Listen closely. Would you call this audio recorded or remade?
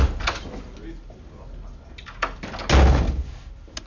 recorded